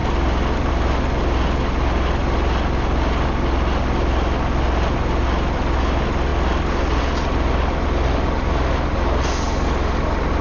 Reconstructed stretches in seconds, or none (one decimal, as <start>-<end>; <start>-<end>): none

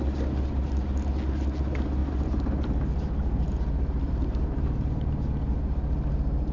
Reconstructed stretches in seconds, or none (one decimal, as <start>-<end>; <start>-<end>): none

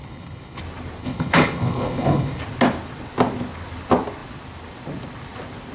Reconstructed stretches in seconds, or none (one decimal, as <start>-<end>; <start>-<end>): 0.0-0.6; 1.0-2.4

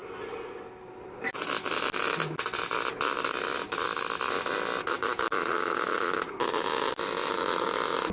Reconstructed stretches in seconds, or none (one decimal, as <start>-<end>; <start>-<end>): 4.8-6.2

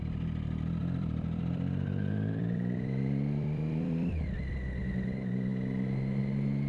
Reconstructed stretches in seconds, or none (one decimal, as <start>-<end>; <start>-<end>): 0.8-4.8

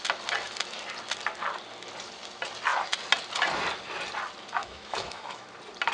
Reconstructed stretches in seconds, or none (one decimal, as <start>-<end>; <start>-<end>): 4.6-5.5